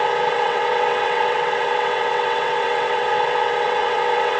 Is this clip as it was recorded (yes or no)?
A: no